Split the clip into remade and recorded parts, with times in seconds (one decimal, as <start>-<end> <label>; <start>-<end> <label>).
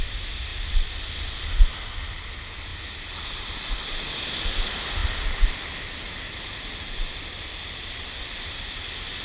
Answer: 0.0-9.2 recorded